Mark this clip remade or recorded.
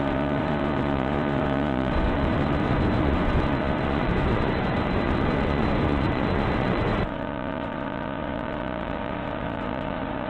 remade